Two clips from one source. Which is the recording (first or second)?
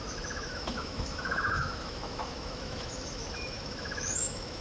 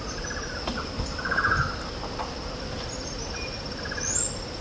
second